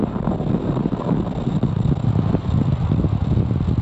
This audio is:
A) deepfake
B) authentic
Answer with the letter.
B